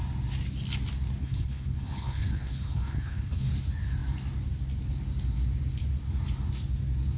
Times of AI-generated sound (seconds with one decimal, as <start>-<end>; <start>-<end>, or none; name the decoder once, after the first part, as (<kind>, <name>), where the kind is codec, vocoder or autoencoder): 1.2-3.5 (codec, HILCodec)